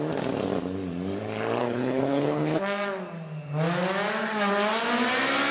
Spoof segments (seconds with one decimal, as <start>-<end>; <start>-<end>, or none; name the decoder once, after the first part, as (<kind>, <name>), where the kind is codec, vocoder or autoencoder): 1.6-2.6 (codec, HILCodec)